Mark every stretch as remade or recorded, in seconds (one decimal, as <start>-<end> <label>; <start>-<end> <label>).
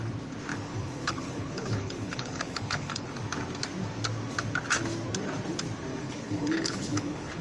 0.0-0.5 recorded; 0.5-3.1 remade; 3.1-6.0 recorded; 6.0-7.4 remade